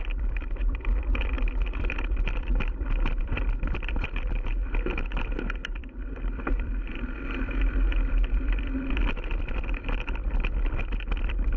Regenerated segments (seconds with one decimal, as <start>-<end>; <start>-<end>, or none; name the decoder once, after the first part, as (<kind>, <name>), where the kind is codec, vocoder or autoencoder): 0.0-2.5 (vocoder, BigVGAN v2); 3.2-11.6

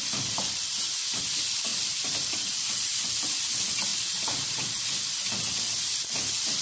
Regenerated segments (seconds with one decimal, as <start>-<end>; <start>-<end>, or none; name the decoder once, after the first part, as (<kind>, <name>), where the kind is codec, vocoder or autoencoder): 1.7-3.1 (vocoder, BigVGAN v2); 3.9-4.8

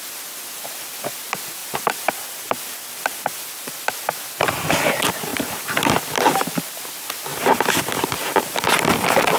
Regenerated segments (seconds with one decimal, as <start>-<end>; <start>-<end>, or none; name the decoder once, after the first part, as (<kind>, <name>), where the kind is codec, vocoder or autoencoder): 1.6-3.7 (vocoder, BigVGAN v2); 5.3-6.0; 7.3-8.6

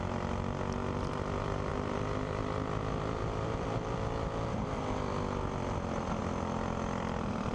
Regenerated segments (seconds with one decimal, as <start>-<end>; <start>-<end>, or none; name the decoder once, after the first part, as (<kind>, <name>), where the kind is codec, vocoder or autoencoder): 0.0-7.5 (vocoder, BigVGAN v2)

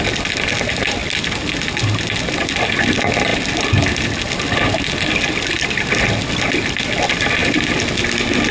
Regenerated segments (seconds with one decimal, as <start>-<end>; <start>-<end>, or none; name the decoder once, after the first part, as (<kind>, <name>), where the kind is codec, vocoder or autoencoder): none

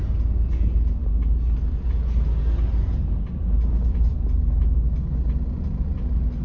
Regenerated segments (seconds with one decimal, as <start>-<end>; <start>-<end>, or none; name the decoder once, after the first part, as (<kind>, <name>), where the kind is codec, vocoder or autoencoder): none